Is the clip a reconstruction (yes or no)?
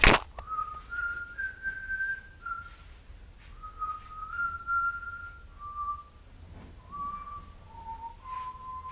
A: no